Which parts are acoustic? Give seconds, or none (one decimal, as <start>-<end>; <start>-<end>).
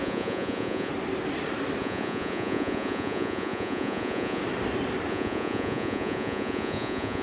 0.9-1.8; 4.4-5.1